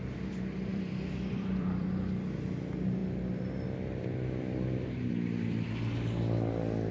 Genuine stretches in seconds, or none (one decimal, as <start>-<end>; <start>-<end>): 0.0-0.7; 1.9-6.9